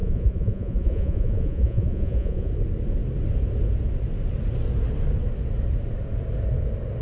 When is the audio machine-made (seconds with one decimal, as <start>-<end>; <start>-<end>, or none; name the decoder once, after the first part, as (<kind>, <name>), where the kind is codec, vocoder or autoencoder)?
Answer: 0.0-2.5 (vocoder, Vocos)